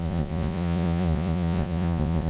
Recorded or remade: remade